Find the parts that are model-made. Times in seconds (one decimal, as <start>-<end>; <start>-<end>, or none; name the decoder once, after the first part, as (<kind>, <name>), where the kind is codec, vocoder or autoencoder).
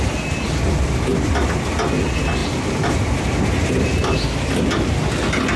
1.1-1.7 (vocoder, BigVGAN v2); 2.4-3.4